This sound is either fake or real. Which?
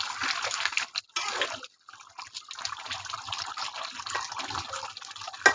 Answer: real